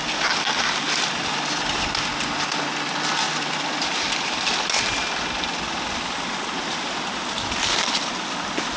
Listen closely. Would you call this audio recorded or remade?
recorded